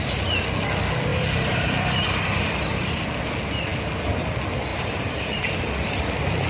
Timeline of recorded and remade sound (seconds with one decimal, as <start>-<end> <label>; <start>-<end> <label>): 0.0-1.1 recorded; 1.1-3.0 remade; 3.0-4.7 recorded; 4.7-6.0 remade; 6.0-6.5 recorded